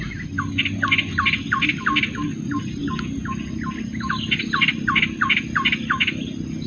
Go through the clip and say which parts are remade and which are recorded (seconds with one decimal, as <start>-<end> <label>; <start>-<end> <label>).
0.0-6.7 recorded